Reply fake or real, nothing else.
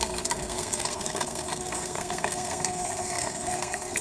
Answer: fake